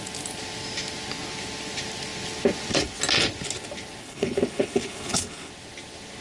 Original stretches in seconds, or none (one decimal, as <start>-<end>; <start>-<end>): 0.0-4.0; 5.5-6.2